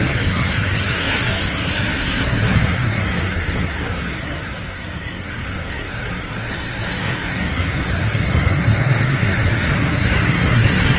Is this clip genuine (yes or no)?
no